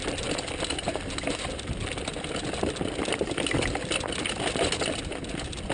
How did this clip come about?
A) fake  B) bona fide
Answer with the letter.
B